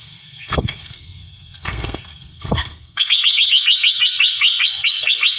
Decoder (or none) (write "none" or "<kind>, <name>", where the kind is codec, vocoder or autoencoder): codec, SNAC